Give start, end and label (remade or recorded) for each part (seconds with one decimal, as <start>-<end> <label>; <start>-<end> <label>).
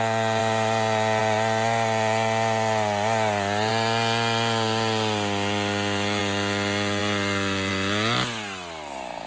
0.0-9.3 recorded